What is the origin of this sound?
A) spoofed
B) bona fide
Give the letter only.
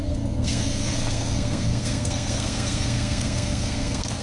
A